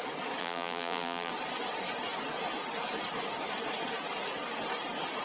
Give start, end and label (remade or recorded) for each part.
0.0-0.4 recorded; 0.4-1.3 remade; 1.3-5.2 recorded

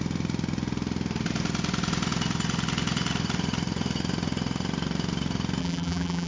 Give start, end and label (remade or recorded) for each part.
0.0-5.6 recorded; 5.6-6.3 remade